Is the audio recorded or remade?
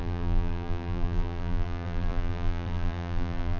remade